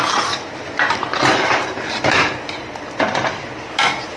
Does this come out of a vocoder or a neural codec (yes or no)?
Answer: no